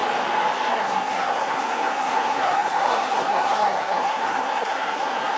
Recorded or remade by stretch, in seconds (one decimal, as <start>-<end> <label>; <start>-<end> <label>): 0.0-0.7 recorded; 0.7-5.4 remade